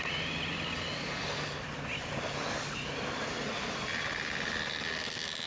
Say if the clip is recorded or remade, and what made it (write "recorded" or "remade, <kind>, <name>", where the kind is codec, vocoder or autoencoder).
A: recorded